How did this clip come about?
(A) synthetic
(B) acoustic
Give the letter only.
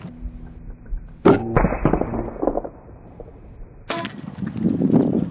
B